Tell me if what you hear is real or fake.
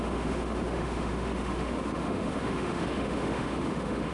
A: fake